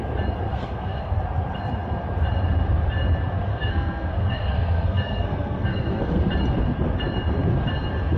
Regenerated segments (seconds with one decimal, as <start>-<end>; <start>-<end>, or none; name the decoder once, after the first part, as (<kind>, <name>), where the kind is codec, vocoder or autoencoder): 0.5-1.2 (codec, SNAC); 3.5-6.2

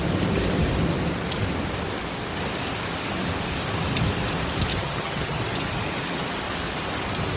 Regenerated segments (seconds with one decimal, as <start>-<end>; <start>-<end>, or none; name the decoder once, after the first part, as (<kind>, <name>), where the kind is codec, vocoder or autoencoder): 4.7-5.4 (vocoder, HiFi-GAN)

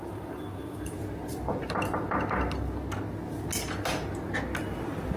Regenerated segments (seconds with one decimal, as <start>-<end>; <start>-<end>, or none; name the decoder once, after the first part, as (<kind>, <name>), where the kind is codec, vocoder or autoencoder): 0.0-1.5 (vocoder, BigVGAN v2); 4.6-5.2

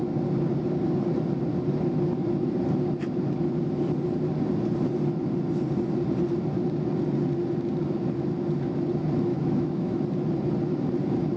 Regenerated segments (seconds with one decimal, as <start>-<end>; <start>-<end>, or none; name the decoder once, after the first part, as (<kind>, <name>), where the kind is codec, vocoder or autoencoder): 9.3-10.0 (autoencoder, DAC-VAE)